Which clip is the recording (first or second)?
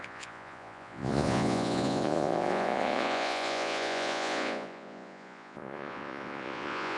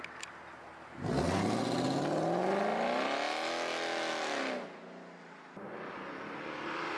second